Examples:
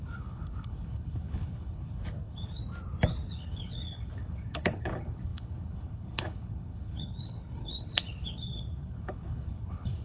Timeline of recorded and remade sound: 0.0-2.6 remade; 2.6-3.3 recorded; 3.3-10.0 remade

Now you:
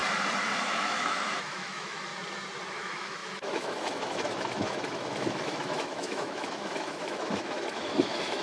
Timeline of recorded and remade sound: 0.0-0.6 recorded; 0.6-2.1 remade; 2.1-2.7 recorded; 2.7-8.4 remade

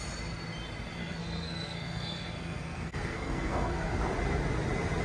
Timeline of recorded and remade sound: 0.0-1.0 recorded; 1.0-4.0 remade; 4.0-5.0 recorded